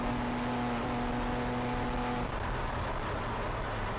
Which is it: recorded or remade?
recorded